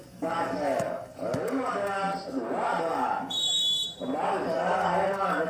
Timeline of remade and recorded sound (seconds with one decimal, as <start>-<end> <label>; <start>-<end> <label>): 0.0-2.1 remade; 2.1-2.8 recorded; 2.8-3.6 remade; 3.6-4.3 recorded; 4.3-5.5 remade